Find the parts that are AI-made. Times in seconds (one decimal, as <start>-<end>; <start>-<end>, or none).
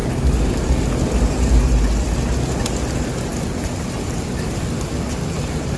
none